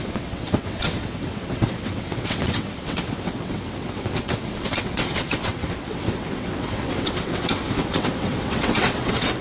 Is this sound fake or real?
fake